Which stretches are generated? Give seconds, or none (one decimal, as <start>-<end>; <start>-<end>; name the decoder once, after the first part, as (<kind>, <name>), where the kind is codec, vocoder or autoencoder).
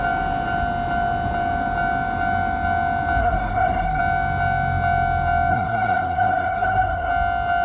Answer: 3.2-4.0 (codec, SNAC); 5.5-7.1